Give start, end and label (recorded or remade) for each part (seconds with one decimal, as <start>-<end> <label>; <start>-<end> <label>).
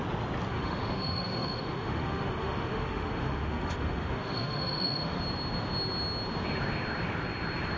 0.0-0.5 recorded; 0.5-5.2 remade; 5.2-7.8 recorded